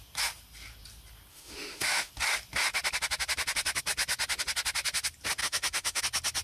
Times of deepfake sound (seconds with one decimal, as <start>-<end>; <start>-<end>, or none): 1.3-2.1; 5.4-6.0